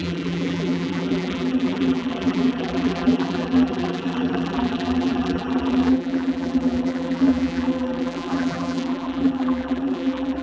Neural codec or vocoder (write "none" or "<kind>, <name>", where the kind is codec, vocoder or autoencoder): vocoder, BigVGAN v2